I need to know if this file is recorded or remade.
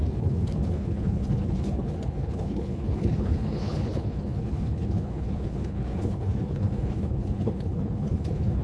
remade